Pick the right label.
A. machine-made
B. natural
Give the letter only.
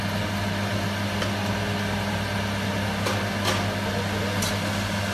B